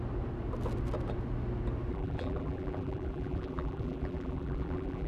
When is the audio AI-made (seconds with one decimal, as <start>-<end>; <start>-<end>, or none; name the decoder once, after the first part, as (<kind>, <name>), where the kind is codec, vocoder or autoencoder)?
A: 1.9-5.1 (vocoder, BigVGAN v2)